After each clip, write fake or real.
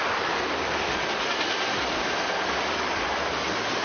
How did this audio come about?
fake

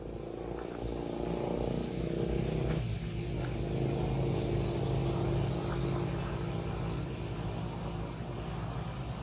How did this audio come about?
real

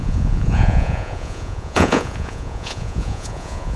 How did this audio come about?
fake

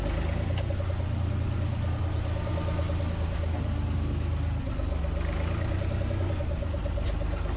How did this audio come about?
real